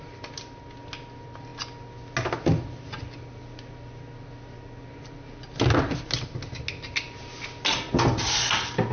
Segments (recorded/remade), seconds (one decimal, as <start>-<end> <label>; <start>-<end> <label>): 0.0-8.9 recorded